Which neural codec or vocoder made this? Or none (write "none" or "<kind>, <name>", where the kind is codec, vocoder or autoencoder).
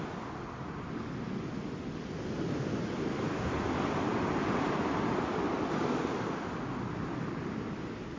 none